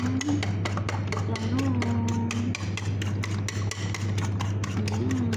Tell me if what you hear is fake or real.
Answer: real